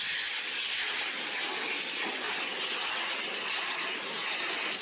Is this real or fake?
real